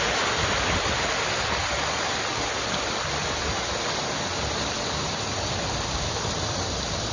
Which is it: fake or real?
real